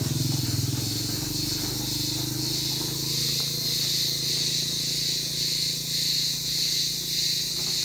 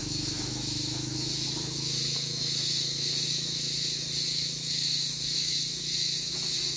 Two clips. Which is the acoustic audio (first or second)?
first